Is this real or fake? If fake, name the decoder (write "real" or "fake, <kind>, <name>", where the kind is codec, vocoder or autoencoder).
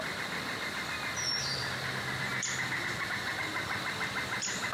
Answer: real